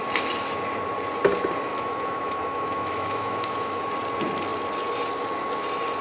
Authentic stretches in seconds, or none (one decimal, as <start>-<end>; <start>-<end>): 0.0-1.7; 3.8-6.0